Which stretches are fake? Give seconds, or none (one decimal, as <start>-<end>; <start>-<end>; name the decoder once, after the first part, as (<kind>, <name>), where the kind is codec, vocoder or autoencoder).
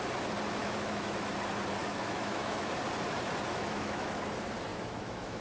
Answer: 0.6-1.3 (autoencoder, DAC-VAE); 1.8-2.7; 3.5-4.2; 4.7-5.4